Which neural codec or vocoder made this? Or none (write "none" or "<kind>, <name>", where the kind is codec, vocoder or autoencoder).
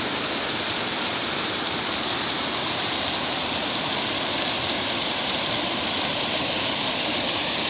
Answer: vocoder, BigVGAN v2